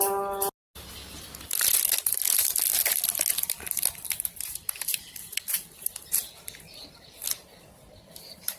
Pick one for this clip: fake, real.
real